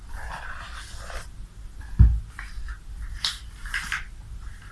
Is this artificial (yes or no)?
no